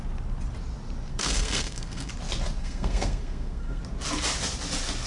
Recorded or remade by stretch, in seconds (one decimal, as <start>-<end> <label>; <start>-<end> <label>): 0.0-1.1 recorded; 1.1-2.1 remade; 2.1-2.6 recorded; 2.6-3.8 remade; 3.8-5.1 recorded